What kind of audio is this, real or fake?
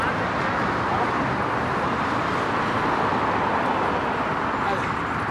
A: real